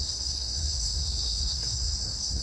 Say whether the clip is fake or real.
fake